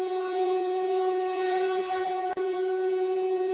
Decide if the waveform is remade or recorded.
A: remade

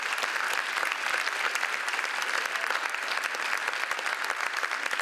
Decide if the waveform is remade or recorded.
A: remade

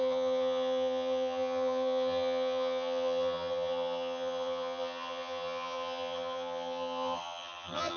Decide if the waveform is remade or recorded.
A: remade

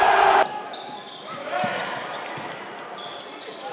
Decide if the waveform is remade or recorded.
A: recorded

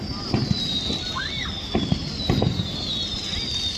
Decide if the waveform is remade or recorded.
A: recorded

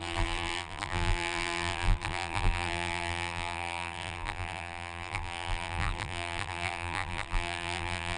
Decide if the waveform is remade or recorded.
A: remade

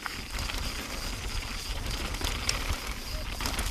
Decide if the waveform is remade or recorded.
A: recorded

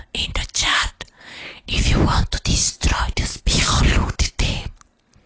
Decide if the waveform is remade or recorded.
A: recorded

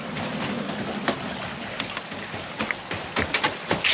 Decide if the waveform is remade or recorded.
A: recorded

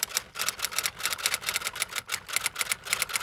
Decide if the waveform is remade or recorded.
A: recorded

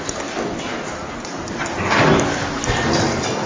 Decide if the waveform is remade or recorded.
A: recorded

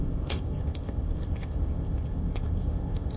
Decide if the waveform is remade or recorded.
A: remade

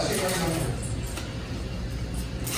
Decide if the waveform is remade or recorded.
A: recorded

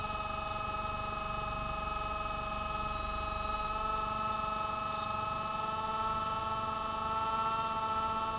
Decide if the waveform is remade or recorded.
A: recorded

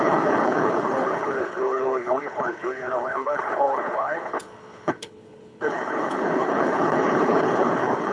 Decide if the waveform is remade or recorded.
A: remade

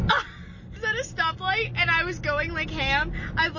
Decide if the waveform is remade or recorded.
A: recorded